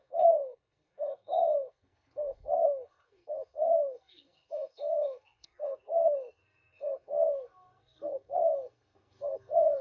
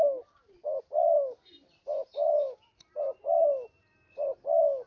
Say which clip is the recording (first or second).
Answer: second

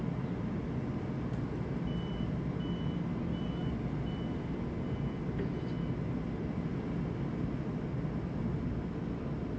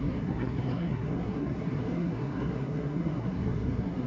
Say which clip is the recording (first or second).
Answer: first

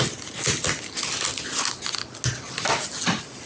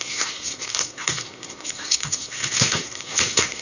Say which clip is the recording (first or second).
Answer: first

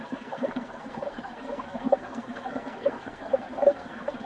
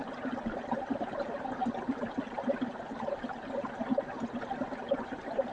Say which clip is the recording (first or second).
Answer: second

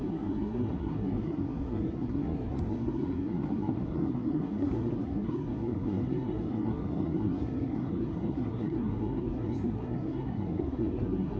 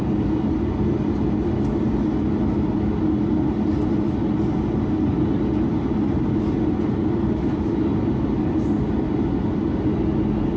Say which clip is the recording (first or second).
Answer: second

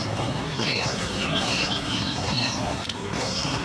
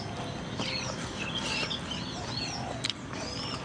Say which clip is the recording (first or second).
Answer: second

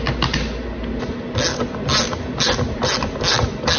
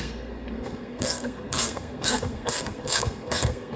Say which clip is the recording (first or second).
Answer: first